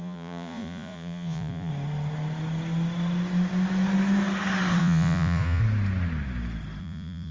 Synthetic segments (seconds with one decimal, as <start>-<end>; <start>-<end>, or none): 0.0-1.7; 4.8-5.6; 6.8-7.3